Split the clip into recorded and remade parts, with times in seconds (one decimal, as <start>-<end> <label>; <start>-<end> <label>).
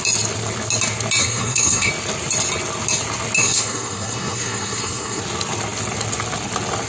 0.0-1.2 recorded; 1.2-1.9 remade; 1.9-3.4 recorded; 3.4-5.2 remade; 5.2-6.9 recorded